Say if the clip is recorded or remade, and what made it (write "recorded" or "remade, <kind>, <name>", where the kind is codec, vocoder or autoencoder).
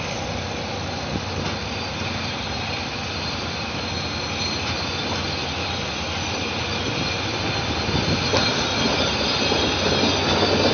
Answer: recorded